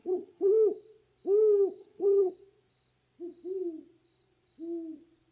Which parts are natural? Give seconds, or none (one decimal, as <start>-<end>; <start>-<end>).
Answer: 0.5-1.8; 2.3-5.3

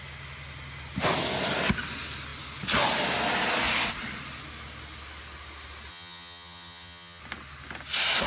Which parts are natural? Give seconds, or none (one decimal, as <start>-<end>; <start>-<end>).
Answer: 0.0-5.9; 7.2-8.3

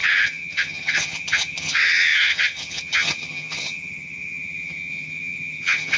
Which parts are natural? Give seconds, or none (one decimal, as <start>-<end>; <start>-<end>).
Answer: none